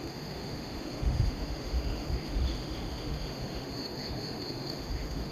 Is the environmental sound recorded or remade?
remade